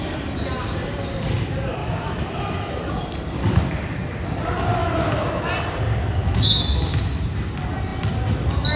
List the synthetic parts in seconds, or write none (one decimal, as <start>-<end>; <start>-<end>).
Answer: 1.8-2.9; 4.8-5.5; 6.2-7.2